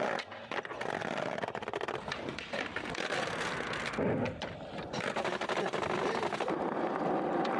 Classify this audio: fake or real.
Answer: real